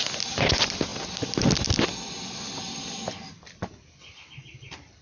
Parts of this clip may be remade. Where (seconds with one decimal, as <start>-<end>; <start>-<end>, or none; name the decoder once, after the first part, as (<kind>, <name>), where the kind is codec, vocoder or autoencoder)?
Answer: none